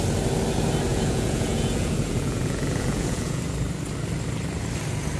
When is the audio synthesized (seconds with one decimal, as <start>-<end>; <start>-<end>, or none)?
0.9-3.4